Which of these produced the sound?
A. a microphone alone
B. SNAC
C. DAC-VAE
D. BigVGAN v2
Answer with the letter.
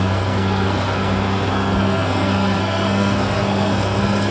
B